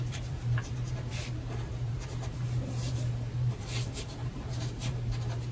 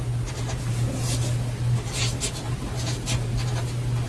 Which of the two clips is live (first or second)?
second